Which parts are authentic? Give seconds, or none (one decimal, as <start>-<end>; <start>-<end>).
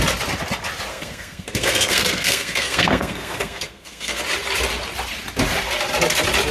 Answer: 0.0-0.9; 4.2-6.5